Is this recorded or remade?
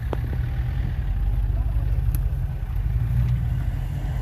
recorded